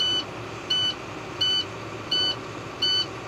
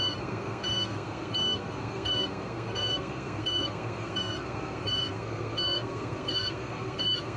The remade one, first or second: second